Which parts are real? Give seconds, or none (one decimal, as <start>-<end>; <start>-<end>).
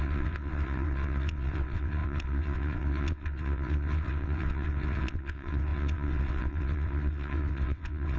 none